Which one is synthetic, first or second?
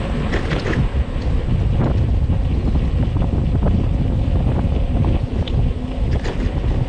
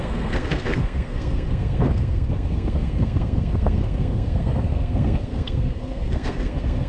second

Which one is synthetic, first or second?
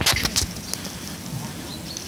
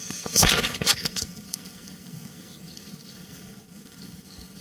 second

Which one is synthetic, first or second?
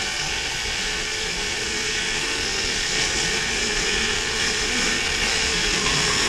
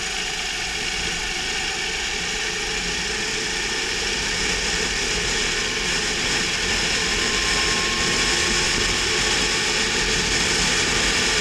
first